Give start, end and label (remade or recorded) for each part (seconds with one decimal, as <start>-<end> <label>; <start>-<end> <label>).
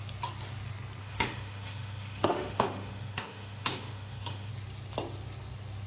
0.0-1.0 recorded; 1.0-4.5 remade; 4.5-5.9 recorded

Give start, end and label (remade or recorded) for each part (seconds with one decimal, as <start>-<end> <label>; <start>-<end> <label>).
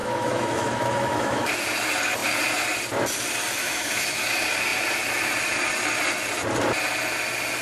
0.0-1.5 remade; 1.5-3.6 recorded; 3.6-4.2 remade; 4.2-7.6 recorded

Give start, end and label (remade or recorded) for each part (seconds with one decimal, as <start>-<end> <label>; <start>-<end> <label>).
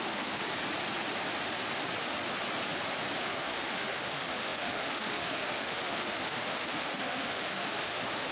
0.0-0.4 remade; 0.4-3.2 recorded; 3.2-8.3 remade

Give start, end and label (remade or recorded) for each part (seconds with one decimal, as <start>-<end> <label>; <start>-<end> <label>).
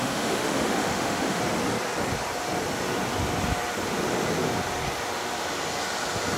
0.0-1.4 remade; 1.4-6.4 recorded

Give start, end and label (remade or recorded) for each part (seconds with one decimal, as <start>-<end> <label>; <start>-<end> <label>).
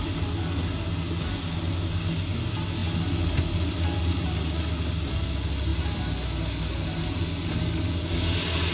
0.0-8.7 recorded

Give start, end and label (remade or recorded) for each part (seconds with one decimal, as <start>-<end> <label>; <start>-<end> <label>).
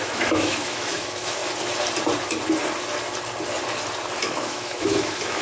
0.0-1.4 remade; 1.4-4.2 recorded; 4.2-5.4 remade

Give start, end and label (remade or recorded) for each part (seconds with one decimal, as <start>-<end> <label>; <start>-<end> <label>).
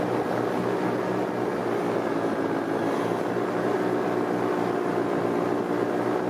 0.0-6.3 recorded